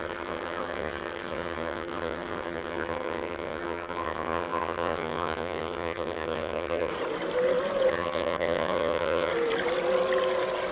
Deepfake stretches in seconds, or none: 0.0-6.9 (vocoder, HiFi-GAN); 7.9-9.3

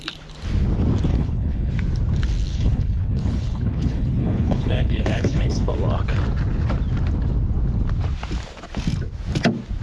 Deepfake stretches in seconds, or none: 1.1-1.7 (codec, HILCodec); 2.5-5.7